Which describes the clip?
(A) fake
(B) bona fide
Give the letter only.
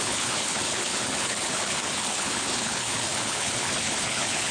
A